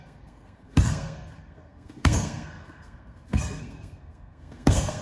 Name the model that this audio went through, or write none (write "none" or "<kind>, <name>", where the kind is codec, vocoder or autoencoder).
codec, SNAC